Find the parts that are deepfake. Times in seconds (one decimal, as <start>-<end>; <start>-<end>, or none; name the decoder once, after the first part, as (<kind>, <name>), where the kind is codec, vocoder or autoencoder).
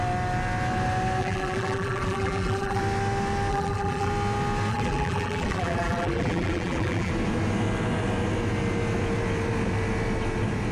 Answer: 1.2-2.8 (vocoder, BigVGAN v2); 3.5-4.1; 4.7-7.1